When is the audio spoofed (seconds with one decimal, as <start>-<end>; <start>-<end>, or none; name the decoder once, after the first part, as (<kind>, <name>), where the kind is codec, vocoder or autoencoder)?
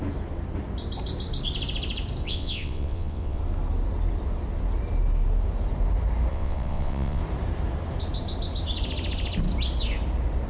2.2-3.4 (vocoder, WaveNeXt); 6.3-7.2